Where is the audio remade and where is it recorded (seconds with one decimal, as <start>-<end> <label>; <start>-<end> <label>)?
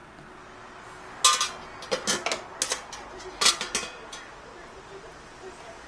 0.0-5.9 recorded